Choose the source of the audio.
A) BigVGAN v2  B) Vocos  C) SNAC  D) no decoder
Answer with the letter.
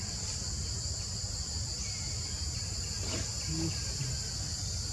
D